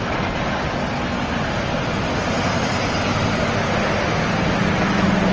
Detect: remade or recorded recorded